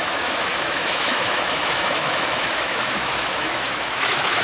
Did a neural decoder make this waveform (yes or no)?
yes